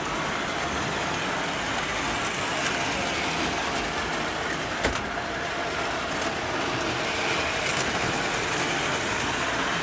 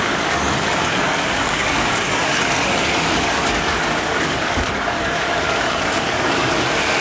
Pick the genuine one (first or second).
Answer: first